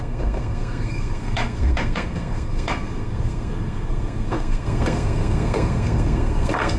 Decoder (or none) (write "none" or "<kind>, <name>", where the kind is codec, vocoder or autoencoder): codec, SNAC